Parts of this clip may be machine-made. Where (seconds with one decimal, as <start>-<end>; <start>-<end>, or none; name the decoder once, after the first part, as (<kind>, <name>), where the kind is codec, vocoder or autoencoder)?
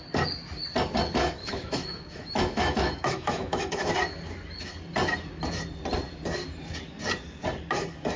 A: 1.4-3.9 (autoencoder, DAC-VAE)